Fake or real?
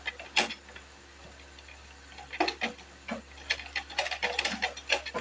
real